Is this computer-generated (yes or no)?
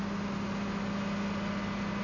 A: no